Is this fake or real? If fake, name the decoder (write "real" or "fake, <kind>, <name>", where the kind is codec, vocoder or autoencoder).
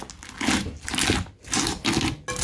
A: real